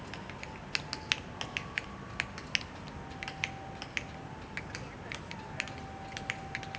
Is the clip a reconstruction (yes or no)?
no